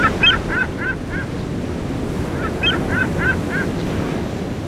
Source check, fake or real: real